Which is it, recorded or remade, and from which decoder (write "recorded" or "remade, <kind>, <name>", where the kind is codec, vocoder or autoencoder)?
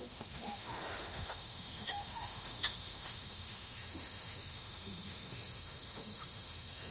remade, autoencoder, DAC-VAE